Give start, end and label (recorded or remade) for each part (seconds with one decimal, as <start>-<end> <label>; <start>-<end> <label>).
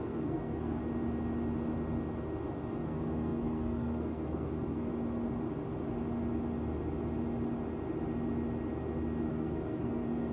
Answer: 0.0-0.8 remade; 0.8-2.7 recorded; 2.7-4.9 remade; 4.9-9.3 recorded; 9.3-10.3 remade